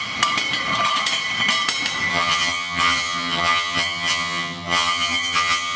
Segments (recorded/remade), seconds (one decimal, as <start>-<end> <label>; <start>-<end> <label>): 0.0-2.1 recorded; 2.1-5.8 remade